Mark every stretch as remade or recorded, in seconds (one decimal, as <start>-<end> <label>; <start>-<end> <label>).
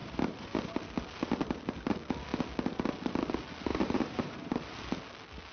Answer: 0.0-0.7 remade; 0.7-3.7 recorded; 3.7-4.6 remade; 4.6-5.5 recorded